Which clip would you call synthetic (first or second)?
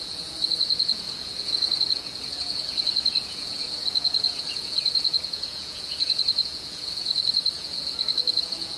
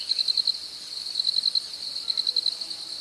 first